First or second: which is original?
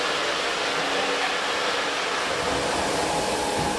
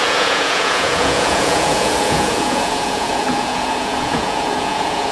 first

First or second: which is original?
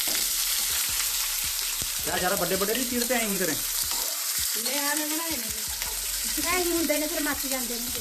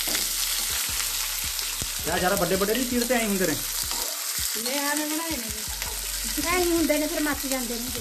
second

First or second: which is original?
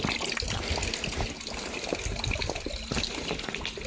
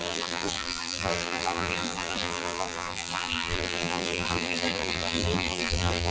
first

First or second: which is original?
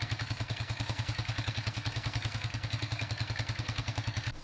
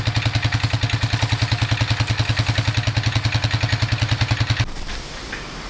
second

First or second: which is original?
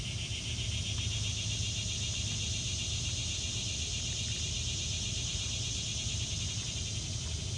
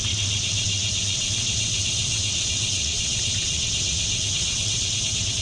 first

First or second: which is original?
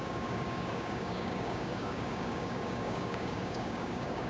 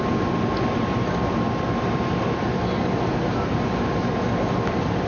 second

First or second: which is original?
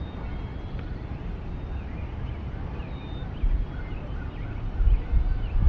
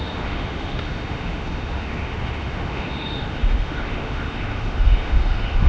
first